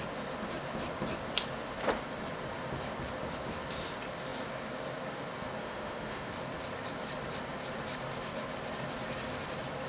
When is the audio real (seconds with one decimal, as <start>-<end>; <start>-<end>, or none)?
0.0-5.6; 6.3-9.9